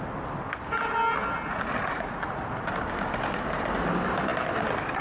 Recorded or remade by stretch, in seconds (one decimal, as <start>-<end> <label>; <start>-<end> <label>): 0.0-1.5 recorded; 1.5-2.4 remade; 2.4-5.0 recorded